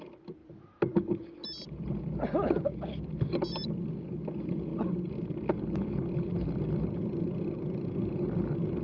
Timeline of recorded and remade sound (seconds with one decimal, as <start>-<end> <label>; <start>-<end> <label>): 0.0-8.8 recorded